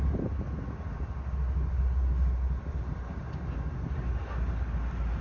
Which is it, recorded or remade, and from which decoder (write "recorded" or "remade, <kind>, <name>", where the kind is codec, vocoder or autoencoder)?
recorded